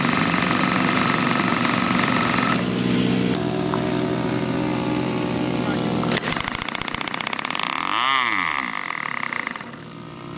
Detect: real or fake real